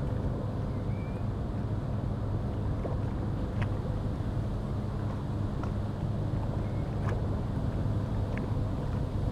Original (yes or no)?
yes